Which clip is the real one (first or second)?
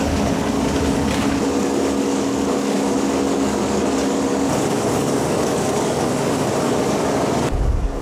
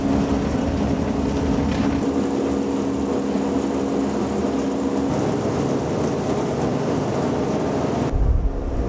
second